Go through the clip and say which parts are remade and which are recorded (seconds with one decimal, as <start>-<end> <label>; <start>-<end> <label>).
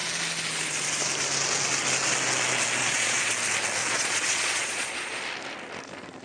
0.0-2.8 recorded; 2.8-3.3 remade; 3.3-3.8 recorded; 3.8-5.2 remade; 5.2-6.2 recorded